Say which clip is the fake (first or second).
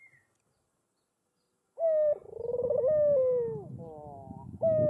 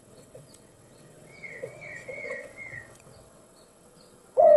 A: second